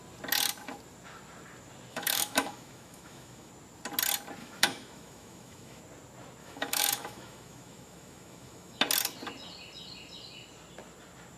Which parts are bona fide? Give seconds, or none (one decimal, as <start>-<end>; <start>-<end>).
0.0-1.9; 3.5-4.4; 5.8-6.4; 8.8-11.4